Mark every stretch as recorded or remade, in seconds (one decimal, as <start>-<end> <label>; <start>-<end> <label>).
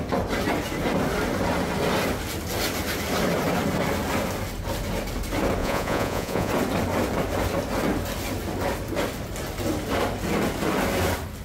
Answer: 0.0-5.6 recorded; 5.6-6.5 remade; 6.5-11.4 recorded